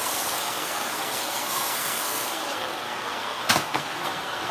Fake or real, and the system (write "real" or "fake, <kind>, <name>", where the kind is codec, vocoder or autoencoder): fake, codec, SNAC